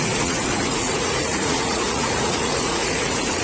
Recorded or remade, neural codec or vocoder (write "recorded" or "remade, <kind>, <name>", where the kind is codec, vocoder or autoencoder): remade, vocoder, Vocos